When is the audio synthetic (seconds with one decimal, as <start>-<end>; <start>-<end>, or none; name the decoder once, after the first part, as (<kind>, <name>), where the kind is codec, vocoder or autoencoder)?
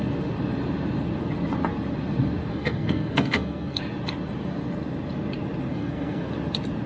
2.5-3.8 (codec, SNAC); 5.7-6.3